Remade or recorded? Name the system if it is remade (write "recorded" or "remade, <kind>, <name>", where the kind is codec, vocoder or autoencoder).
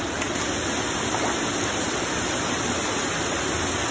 recorded